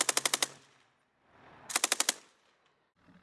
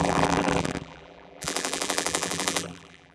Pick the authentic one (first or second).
first